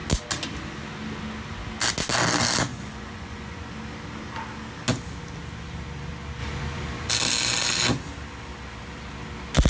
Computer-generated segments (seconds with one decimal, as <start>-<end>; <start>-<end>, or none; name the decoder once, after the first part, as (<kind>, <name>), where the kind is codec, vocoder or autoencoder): 2.7-3.7 (vocoder, Vocos)